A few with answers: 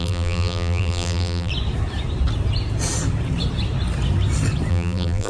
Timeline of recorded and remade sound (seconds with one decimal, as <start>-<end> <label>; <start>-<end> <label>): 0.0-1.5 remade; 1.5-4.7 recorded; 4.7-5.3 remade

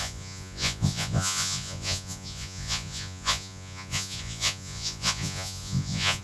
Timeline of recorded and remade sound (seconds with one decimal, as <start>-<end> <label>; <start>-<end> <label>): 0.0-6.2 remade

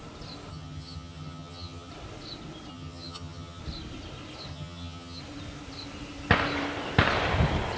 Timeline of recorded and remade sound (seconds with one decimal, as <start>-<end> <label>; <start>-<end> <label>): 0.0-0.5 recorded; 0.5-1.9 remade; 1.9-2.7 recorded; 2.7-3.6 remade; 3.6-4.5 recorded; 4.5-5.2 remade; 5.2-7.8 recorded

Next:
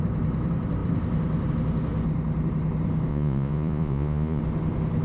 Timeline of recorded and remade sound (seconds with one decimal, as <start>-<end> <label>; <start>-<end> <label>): 0.0-3.1 recorded; 3.1-4.4 remade; 4.4-5.0 recorded

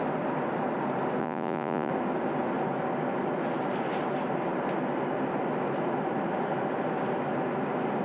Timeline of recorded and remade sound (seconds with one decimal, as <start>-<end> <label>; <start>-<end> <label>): 0.0-1.2 recorded; 1.2-1.9 remade; 1.9-8.0 recorded

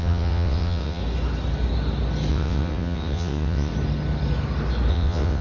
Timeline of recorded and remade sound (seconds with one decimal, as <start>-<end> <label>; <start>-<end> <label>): 0.0-1.0 remade; 1.0-2.3 recorded; 2.3-3.7 remade; 3.7-4.9 recorded; 4.9-5.4 remade

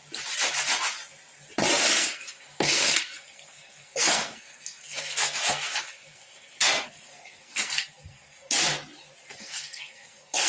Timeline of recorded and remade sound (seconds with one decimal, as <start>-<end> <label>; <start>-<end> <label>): 0.0-1.8 recorded; 1.8-8.6 remade; 8.6-9.3 recorded; 9.3-10.5 remade

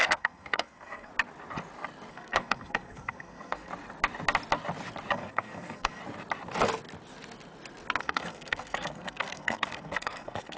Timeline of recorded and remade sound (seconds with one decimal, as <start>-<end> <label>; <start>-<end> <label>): 0.0-1.1 remade; 1.1-2.1 recorded; 2.1-3.7 remade; 3.7-5.1 recorded; 5.1-6.0 remade; 6.0-8.0 recorded; 8.0-10.6 remade